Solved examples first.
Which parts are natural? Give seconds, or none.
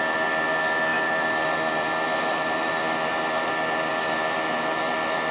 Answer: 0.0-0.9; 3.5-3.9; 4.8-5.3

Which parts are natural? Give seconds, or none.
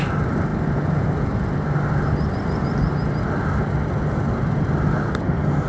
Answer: 0.0-5.7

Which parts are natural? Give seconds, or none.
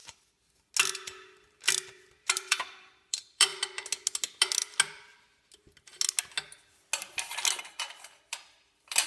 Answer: 0.0-1.9; 3.5-7.6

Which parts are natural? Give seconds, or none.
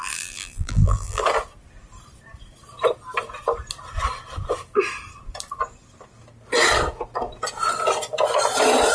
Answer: 1.2-8.9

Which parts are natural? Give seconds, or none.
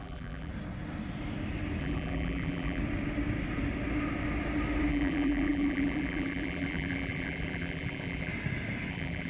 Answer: 0.5-1.8; 2.8-4.9; 8.3-8.9